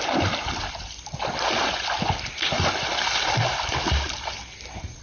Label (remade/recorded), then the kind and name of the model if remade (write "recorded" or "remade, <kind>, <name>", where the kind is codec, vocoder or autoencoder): recorded